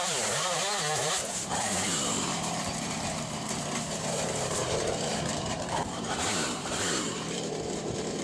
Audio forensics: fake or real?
fake